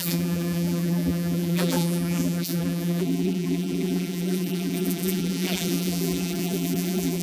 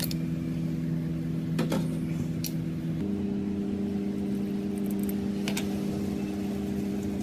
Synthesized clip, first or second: first